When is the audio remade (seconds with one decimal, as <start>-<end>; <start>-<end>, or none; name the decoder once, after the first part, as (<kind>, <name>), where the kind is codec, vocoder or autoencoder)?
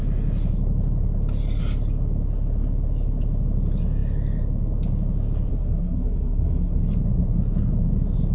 5.5-6.8 (codec, SNAC)